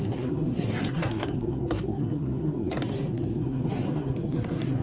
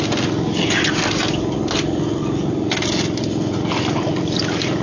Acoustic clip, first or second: second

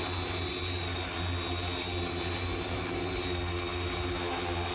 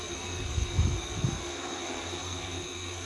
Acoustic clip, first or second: first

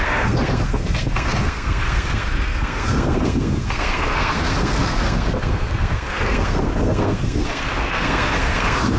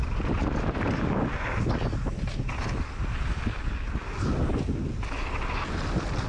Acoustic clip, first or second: second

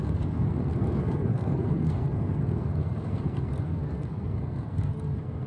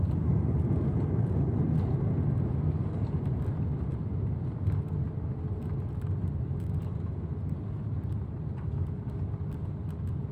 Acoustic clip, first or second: second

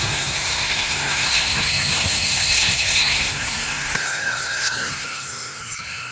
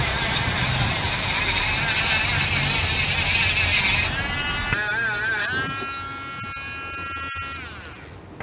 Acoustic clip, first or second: second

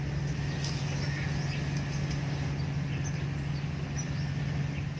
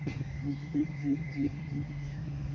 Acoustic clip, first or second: first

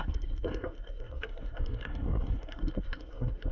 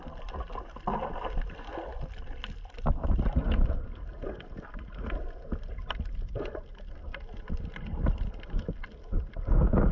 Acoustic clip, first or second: second